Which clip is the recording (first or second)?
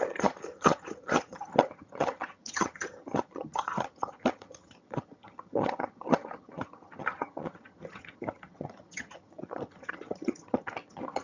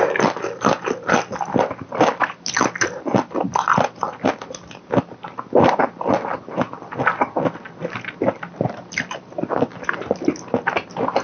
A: second